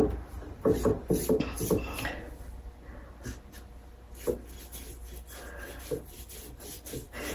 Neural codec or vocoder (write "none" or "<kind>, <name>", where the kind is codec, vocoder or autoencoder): none